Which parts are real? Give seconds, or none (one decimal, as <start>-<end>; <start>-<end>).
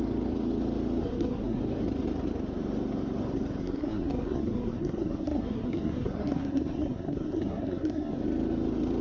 0.0-1.0; 1.6-3.6; 8.2-9.0